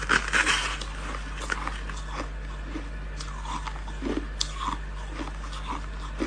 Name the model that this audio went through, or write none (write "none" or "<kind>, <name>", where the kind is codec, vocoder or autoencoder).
none